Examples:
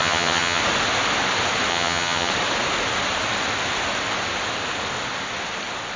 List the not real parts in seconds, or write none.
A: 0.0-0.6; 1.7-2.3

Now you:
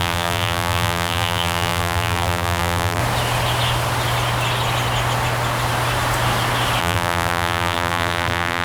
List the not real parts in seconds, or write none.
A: 0.0-3.0; 6.8-8.6

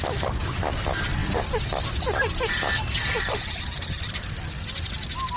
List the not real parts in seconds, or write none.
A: 1.2-4.4